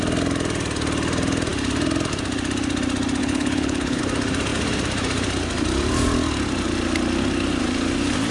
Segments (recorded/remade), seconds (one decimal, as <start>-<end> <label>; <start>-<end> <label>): 0.0-3.2 recorded; 3.2-4.0 remade; 4.0-8.3 recorded